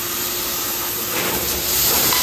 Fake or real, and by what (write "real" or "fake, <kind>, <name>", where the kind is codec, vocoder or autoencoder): fake, vocoder, BigVGAN v2